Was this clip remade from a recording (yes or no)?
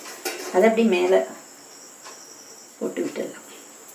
no